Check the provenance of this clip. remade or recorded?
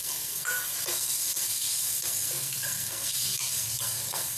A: remade